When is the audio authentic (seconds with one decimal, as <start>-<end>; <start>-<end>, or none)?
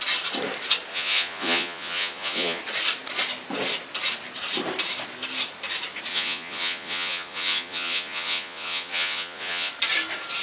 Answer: 0.0-0.9; 2.6-6.1; 9.7-10.4